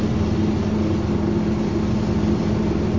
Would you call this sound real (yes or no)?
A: yes